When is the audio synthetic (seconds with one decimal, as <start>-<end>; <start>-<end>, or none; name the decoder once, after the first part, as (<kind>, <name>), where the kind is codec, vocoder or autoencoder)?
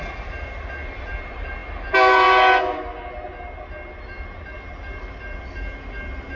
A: none